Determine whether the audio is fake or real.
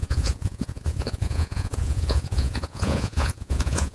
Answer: fake